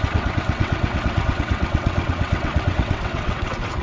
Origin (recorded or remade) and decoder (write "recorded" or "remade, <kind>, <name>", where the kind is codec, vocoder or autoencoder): remade, vocoder, WaveNeXt